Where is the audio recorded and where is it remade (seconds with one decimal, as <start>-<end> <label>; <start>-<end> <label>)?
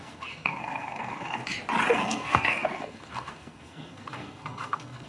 0.0-1.4 remade; 1.4-1.9 recorded; 1.9-5.1 remade